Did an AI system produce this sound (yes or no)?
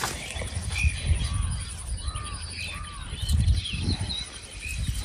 no